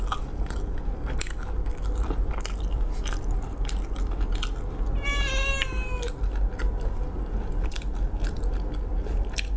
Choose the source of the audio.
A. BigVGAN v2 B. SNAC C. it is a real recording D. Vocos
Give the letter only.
C